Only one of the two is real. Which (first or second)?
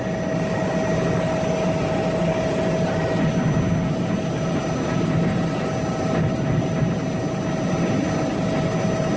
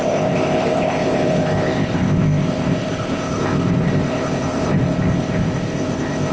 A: first